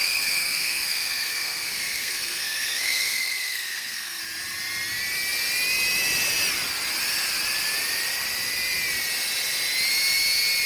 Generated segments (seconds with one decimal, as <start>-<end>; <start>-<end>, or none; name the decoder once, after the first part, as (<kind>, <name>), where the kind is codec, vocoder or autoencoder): 0.0-4.2 (codec, SNAC)